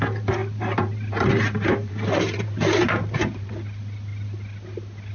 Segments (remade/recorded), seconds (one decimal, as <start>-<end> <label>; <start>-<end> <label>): 0.0-0.4 recorded; 0.4-3.5 remade; 3.5-5.1 recorded